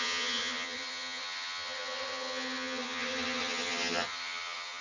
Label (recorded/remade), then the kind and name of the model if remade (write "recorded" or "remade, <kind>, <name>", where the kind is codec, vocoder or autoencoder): remade, vocoder, HiFi-GAN